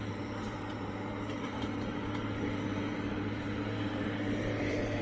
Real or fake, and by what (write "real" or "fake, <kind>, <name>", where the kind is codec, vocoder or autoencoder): fake, vocoder, BigVGAN v2